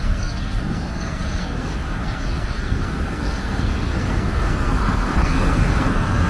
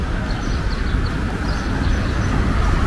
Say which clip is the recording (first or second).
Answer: second